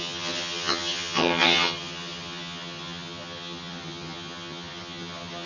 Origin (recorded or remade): remade